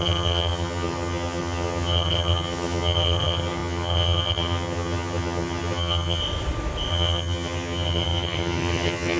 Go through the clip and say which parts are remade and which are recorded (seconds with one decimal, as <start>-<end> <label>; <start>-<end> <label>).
0.0-6.2 remade; 6.2-6.9 recorded; 6.9-9.2 remade